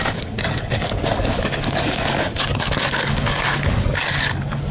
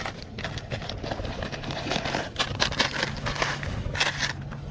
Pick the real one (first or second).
second